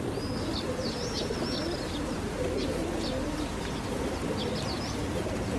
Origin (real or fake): real